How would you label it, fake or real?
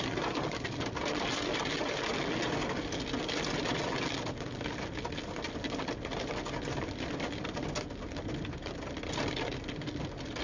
real